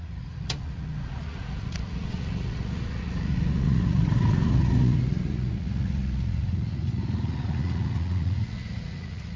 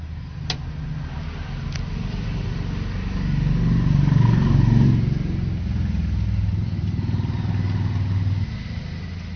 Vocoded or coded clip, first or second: first